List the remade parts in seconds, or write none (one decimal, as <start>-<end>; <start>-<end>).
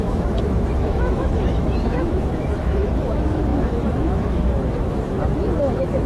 0.0-6.1